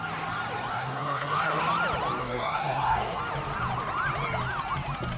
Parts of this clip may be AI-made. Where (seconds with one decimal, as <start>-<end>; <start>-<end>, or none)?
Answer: 0.7-1.6; 2.2-3.2